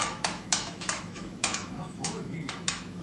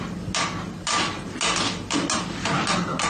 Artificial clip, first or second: first